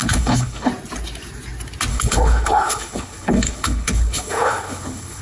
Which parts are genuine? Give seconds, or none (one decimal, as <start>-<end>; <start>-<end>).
0.7-1.9

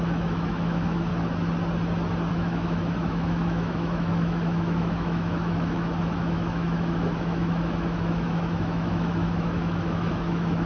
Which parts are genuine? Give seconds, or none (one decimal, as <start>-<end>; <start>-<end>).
1.1-2.3

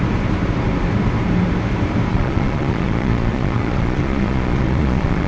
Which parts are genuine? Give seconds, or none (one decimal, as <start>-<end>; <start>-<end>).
0.0-2.1